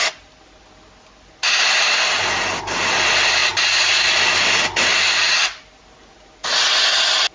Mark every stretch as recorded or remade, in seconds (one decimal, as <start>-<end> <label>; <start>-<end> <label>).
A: 0.0-7.3 recorded